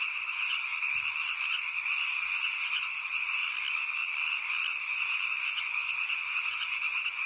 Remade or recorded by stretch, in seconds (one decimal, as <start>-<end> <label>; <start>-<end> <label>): 0.0-0.7 remade; 0.7-1.5 recorded; 1.5-3.4 remade; 3.4-4.8 recorded; 4.8-7.3 remade